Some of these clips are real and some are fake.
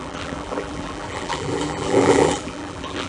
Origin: fake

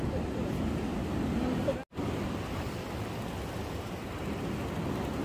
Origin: real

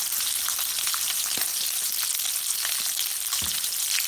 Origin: real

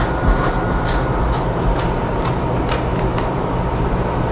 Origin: fake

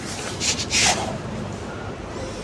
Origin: real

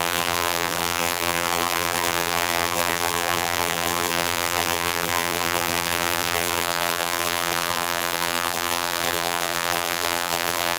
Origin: fake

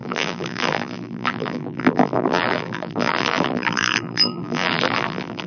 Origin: fake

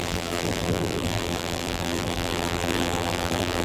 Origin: fake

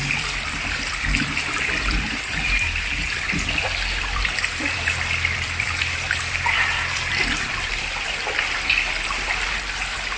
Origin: fake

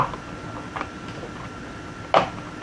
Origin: real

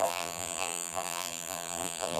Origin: fake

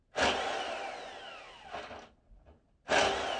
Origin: real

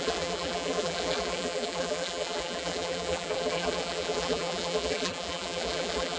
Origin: fake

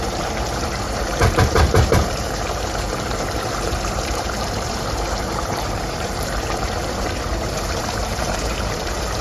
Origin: fake